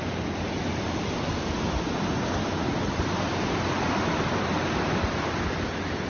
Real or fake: real